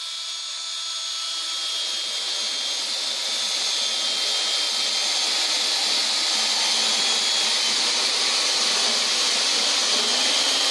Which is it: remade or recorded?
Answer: recorded